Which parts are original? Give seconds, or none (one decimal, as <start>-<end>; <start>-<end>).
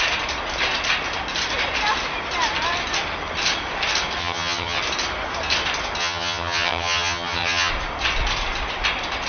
0.0-4.2; 4.8-6.0; 7.7-9.3